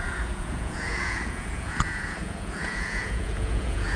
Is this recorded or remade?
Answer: remade